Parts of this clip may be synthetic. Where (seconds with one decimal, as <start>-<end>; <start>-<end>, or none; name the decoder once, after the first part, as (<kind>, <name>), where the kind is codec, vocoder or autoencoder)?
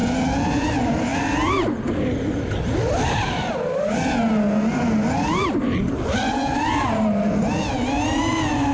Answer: 0.0-0.7 (vocoder, BigVGAN v2)